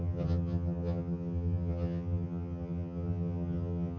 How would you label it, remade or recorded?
remade